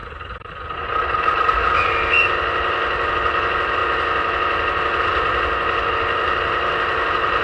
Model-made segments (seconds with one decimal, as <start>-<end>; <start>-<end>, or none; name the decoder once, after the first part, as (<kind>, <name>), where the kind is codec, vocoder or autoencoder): 0.0-1.8 (vocoder, BigVGAN v2)